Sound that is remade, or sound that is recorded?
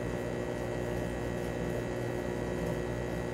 recorded